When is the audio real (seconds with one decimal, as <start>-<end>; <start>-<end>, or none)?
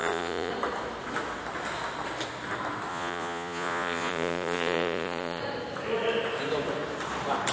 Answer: 0.5-2.9; 5.4-7.5